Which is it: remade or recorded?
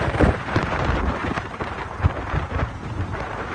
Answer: remade